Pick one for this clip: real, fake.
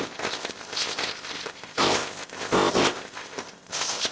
fake